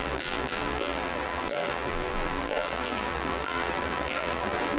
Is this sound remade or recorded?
remade